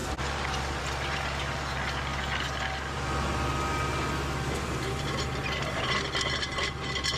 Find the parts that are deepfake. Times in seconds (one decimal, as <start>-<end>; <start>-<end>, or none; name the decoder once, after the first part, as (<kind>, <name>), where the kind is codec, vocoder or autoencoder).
none